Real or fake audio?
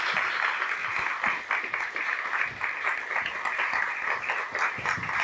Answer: real